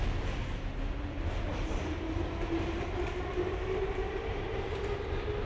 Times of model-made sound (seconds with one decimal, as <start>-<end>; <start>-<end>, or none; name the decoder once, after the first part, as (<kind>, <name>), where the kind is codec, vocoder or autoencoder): 1.5-4.8 (vocoder, BigVGAN v2)